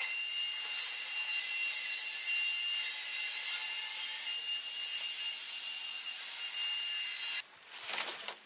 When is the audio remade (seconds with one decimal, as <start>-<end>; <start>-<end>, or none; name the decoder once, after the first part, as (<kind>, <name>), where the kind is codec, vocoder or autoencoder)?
5.4-6.2 (vocoder, Vocos)